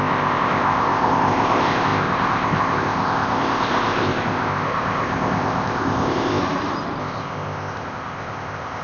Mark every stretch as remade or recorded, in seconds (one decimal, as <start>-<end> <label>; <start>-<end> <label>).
0.0-6.4 remade; 6.4-7.0 recorded; 7.0-8.8 remade